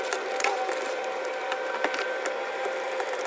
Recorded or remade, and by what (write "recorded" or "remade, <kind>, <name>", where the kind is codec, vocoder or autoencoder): remade, vocoder, BigVGAN v2